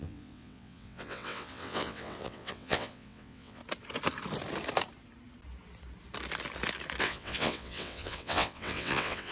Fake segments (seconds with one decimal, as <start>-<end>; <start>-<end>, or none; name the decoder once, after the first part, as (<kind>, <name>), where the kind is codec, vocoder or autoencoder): 0.0-3.6 (vocoder, WaveNeXt); 7.0-9.3

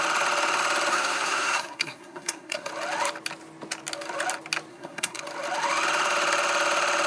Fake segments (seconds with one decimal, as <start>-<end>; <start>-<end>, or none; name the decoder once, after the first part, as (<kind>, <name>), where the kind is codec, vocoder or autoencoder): 0.9-2.7 (codec, SNAC); 4.7-5.2